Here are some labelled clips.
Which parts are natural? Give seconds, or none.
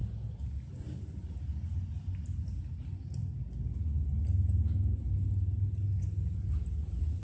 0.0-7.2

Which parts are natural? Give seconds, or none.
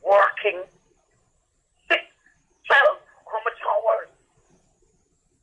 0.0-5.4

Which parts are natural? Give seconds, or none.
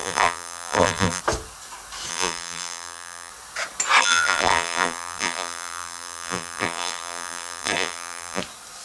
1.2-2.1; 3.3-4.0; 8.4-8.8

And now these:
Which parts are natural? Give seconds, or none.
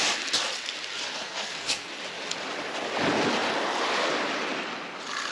0.0-1.2; 1.9-5.3